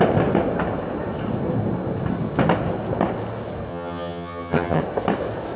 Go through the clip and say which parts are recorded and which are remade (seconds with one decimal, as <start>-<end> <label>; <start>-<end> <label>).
0.0-3.7 recorded; 3.7-4.8 remade; 4.8-5.6 recorded